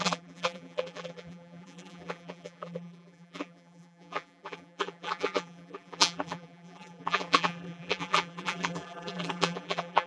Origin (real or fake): fake